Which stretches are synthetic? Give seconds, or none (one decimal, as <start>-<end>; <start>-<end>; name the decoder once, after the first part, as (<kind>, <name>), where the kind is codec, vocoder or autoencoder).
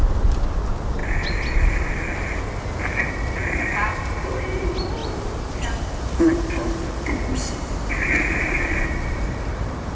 3.4-4.3 (vocoder, BigVGAN v2); 5.0-9.9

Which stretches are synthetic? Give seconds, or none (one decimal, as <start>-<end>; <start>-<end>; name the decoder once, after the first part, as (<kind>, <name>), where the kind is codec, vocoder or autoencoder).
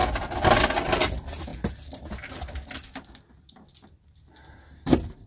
0.0-0.6 (vocoder, BigVGAN v2)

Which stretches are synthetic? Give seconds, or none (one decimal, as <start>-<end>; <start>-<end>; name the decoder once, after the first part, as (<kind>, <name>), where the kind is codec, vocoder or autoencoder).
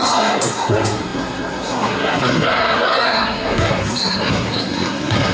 0.0-5.3 (codec, SNAC)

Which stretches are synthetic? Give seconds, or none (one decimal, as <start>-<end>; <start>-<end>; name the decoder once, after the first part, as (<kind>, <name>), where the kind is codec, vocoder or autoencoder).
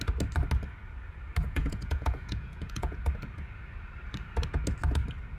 1.4-3.0 (vocoder, Vocos)